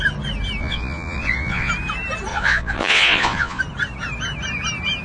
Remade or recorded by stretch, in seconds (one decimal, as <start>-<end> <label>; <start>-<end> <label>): 0.0-0.6 recorded; 0.6-1.7 remade; 1.7-2.3 recorded; 2.3-3.6 remade; 3.6-5.0 recorded